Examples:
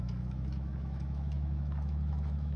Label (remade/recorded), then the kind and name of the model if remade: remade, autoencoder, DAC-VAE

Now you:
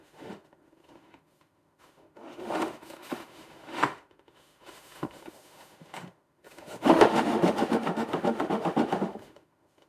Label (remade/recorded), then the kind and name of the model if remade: remade, autoencoder, DAC-VAE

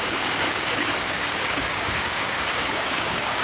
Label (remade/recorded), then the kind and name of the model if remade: remade, codec, DAC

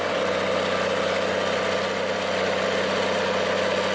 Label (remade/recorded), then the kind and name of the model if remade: recorded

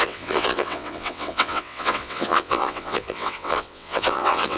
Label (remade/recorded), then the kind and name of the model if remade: remade, vocoder, WaveNeXt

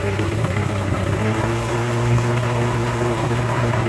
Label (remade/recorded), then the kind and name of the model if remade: remade, codec, SNAC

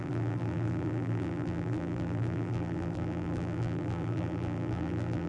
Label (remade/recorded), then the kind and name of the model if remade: remade, vocoder, BigVGAN v2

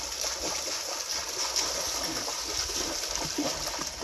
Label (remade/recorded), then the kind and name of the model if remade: recorded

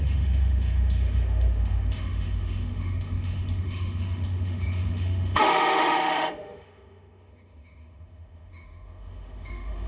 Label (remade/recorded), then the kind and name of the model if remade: remade, autoencoder, DAC-VAE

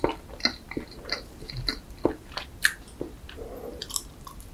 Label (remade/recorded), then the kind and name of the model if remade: remade, vocoder, BigVGAN v2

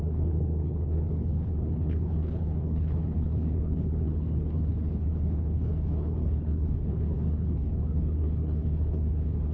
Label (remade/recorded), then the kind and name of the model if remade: remade, codec, HILCodec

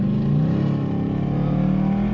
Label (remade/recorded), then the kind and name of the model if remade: recorded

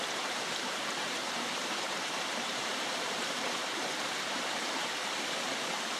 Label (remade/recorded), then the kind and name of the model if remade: remade, vocoder, BigVGAN v2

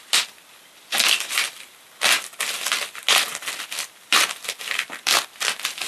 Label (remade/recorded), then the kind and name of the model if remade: recorded